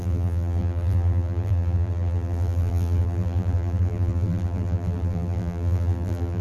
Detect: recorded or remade remade